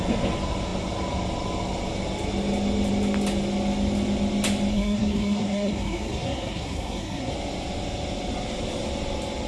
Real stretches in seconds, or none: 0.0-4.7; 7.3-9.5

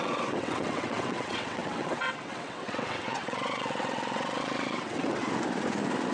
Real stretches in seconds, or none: 5.2-6.1

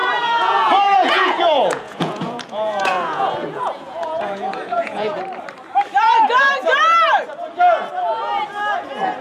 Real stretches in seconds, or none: 5.2-9.2